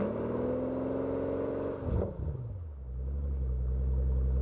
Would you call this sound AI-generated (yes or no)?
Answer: no